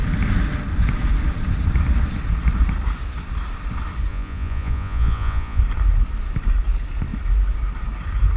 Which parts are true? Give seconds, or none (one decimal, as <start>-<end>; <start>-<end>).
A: 0.0-4.1; 5.6-8.4